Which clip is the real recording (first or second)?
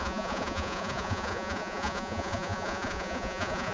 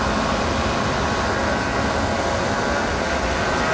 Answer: second